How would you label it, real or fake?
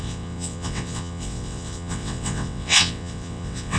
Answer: fake